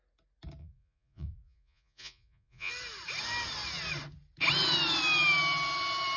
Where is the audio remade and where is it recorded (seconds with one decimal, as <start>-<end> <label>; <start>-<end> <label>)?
0.0-0.6 recorded; 0.6-2.7 remade; 2.7-6.2 recorded